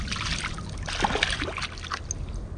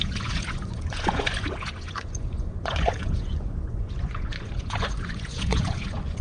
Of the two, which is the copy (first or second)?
second